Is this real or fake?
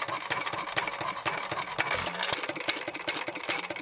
real